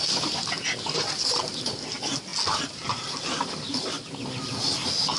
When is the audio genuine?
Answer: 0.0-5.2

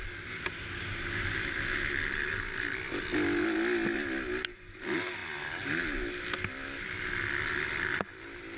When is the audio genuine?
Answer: 0.0-8.6

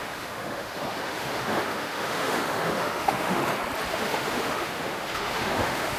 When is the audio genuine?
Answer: 3.4-3.9

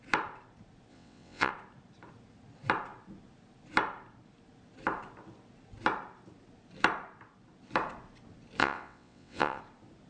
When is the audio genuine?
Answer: 0.0-0.9; 1.5-8.6; 9.6-10.1